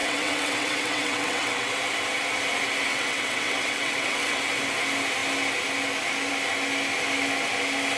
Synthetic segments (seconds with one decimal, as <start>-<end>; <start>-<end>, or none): 0.0-1.7; 2.9-4.4